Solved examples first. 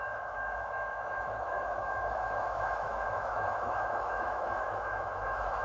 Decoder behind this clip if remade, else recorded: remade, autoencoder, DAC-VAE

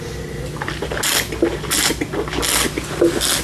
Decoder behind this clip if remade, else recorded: recorded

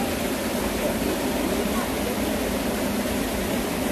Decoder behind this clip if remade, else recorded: recorded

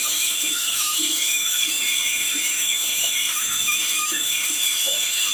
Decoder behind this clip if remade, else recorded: remade, autoencoder, DAC-VAE